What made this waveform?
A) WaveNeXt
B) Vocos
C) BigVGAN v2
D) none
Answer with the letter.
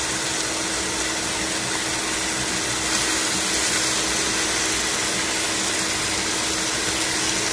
D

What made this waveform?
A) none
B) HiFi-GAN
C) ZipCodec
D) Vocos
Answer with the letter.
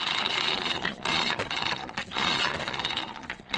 D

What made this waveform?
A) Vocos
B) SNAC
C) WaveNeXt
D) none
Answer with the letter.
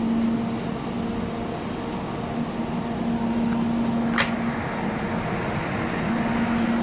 D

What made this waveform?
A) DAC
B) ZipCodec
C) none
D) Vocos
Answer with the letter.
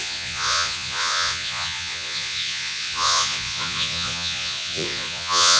D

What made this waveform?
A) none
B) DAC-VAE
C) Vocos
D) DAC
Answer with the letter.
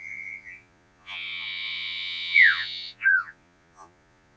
C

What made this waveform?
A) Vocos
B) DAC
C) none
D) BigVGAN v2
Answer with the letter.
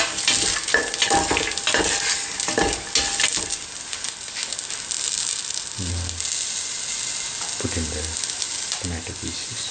C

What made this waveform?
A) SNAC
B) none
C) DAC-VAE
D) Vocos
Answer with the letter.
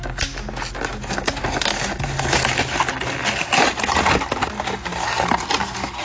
B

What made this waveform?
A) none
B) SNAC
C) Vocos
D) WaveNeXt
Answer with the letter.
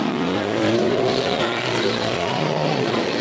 C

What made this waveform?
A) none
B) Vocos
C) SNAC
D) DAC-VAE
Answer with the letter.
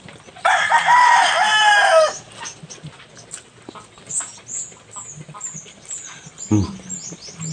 A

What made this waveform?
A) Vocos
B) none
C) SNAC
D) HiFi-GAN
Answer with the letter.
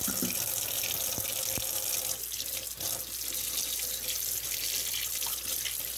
B